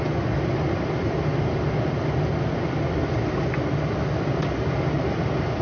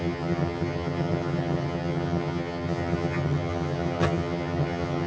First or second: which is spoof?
second